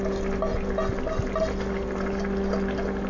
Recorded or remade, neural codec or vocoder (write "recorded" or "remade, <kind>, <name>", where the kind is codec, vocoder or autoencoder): recorded